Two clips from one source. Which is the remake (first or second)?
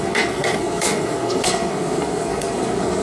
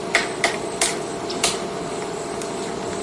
first